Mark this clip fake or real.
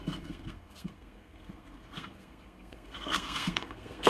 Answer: fake